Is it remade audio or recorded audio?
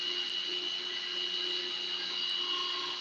recorded